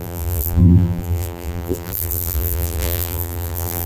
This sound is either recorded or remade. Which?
remade